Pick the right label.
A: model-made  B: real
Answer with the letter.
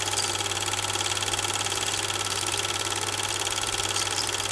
B